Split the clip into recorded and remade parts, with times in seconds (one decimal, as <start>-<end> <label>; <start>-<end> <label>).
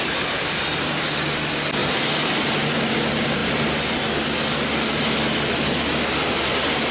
0.0-1.8 recorded; 1.8-2.8 remade; 2.8-6.9 recorded